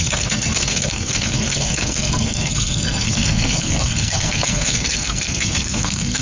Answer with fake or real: fake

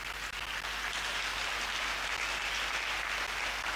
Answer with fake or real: real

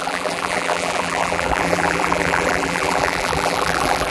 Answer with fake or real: fake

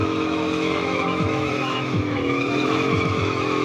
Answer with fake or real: fake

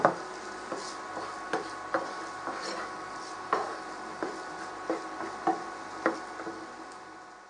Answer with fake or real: real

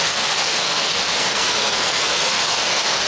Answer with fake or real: fake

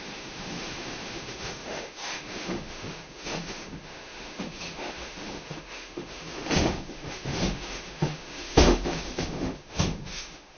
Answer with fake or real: fake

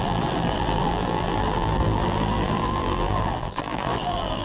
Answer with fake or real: fake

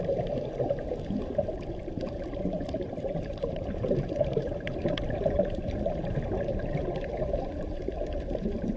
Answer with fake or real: fake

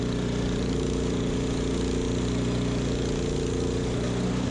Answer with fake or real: real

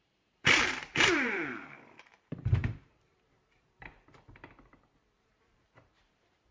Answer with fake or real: fake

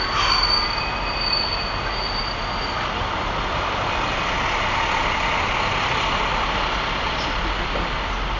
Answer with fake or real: real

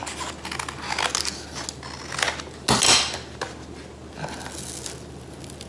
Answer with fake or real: real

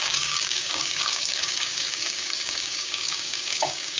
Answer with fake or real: fake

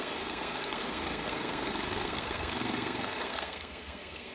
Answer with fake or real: fake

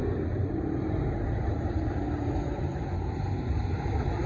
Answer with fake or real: fake